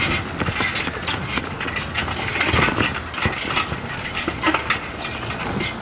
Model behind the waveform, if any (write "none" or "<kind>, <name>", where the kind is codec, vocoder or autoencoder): none